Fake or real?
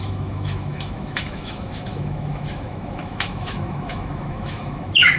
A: fake